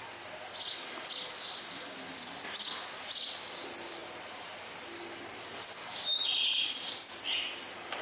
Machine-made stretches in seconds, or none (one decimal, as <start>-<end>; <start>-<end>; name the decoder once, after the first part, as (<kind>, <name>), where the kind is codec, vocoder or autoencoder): none